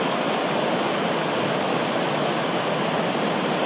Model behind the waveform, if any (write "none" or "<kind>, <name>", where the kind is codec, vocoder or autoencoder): none